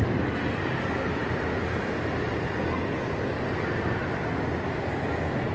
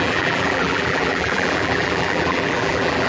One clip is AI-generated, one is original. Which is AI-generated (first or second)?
second